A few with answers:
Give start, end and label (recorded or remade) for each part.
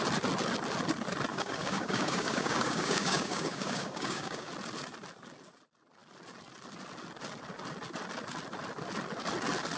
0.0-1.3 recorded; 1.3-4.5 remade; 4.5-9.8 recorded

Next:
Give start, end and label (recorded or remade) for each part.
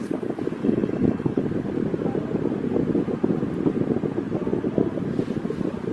0.0-0.6 recorded; 0.6-1.4 remade; 1.4-5.9 recorded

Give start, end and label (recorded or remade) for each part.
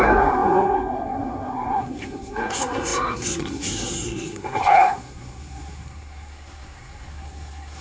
0.0-7.8 remade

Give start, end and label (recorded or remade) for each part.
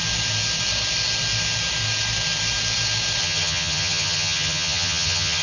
0.0-3.2 recorded; 3.2-5.4 remade